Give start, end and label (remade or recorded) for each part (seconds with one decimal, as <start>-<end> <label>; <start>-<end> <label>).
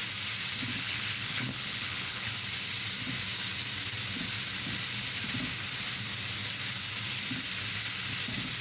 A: 0.0-0.7 recorded; 0.7-2.3 remade; 2.3-8.6 recorded